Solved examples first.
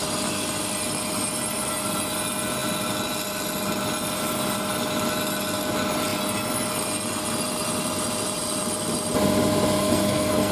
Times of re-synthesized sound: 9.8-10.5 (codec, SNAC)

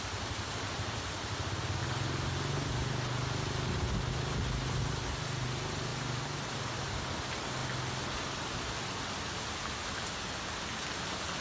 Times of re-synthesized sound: none